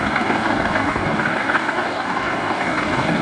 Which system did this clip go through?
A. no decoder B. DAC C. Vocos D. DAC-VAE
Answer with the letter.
B